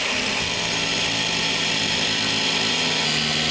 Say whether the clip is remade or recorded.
recorded